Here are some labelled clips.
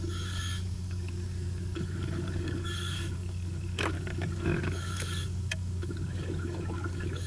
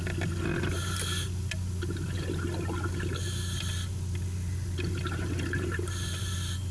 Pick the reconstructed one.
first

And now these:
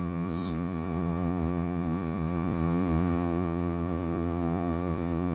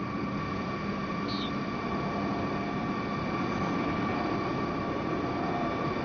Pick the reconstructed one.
first